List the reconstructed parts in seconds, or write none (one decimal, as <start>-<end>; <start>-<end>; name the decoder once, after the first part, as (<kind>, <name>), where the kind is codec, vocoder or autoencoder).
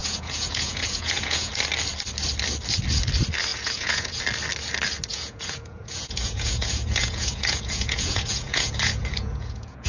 0.0-1.5 (vocoder, Vocos); 3.5-4.2; 5.1-9.9